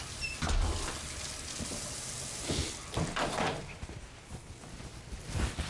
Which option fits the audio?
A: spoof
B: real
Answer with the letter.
B